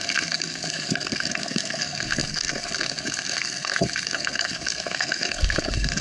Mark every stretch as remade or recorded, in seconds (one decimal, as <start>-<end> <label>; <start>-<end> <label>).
0.0-6.0 remade